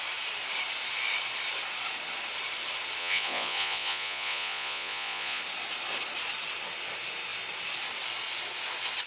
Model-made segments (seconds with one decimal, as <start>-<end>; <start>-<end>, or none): 3.0-5.4